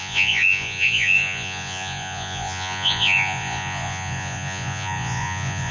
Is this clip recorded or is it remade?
remade